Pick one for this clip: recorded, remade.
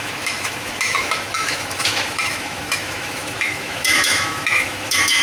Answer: remade